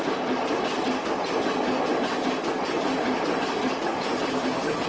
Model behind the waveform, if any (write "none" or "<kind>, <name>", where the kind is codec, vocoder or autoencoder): none